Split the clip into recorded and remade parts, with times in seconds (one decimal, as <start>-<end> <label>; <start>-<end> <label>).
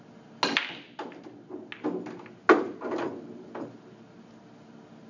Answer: 0.0-5.1 recorded